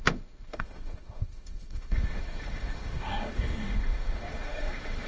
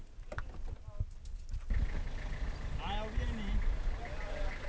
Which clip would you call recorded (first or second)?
second